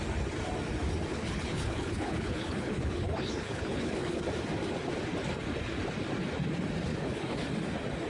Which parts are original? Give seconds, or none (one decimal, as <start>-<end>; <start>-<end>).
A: 0.0-1.1; 4.2-6.9; 7.5-8.1